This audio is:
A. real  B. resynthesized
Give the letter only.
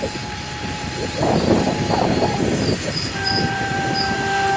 B